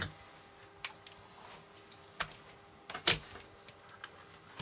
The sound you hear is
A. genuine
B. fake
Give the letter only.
A